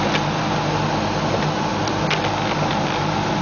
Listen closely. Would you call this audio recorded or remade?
recorded